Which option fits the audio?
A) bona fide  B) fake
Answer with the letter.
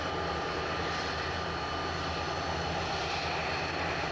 A